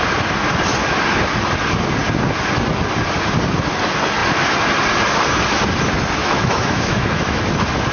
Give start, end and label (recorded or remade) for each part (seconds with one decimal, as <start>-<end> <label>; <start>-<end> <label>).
0.0-6.2 recorded; 6.2-7.4 remade; 7.4-7.9 recorded